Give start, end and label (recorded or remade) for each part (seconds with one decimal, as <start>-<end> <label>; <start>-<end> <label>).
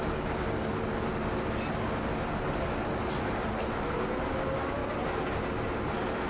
0.0-6.3 recorded